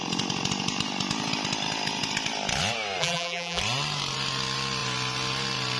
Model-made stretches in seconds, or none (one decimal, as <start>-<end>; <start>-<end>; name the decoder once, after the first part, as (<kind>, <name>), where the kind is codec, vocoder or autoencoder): 3.0-3.6 (vocoder, BigVGAN v2)